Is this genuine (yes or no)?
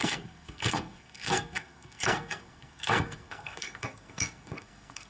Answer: no